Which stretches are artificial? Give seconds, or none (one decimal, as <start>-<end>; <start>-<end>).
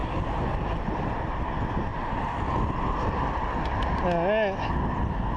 0.0-1.3